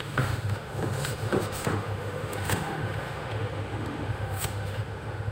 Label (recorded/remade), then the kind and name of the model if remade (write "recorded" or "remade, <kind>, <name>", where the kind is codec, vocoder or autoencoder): remade, autoencoder, DAC-VAE